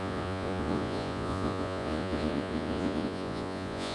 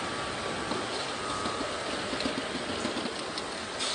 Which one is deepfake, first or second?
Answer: first